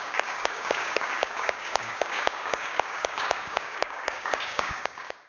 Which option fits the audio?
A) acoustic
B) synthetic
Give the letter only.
B